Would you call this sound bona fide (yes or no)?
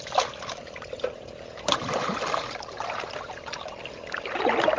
yes